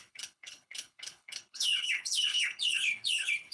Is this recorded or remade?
remade